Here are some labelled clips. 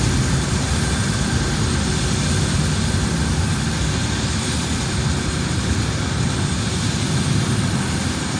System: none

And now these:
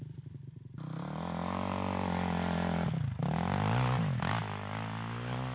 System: none